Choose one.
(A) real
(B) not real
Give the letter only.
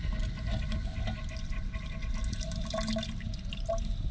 A